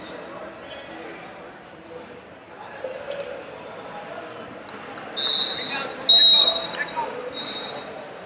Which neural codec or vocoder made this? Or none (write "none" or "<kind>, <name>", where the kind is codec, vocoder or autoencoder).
none